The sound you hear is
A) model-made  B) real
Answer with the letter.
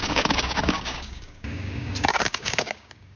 A